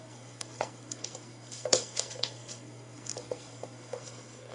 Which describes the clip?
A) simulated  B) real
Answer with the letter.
A